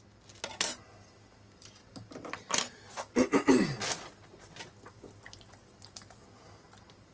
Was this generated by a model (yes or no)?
no